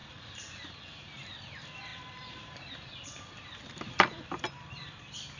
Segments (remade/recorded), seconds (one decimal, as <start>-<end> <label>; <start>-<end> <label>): 0.0-0.7 remade; 0.7-1.9 recorded; 1.9-2.7 remade; 2.7-5.4 recorded